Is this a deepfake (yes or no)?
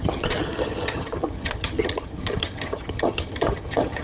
yes